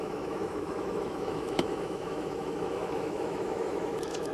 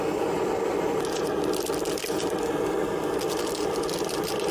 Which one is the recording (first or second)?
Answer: second